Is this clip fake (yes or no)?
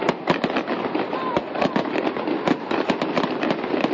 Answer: no